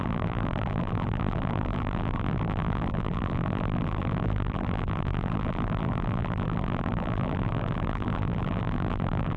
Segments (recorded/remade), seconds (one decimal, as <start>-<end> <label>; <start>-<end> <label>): 0.0-9.4 remade